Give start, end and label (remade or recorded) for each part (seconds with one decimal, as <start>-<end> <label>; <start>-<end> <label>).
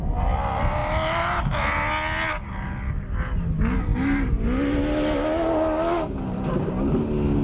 0.0-7.4 recorded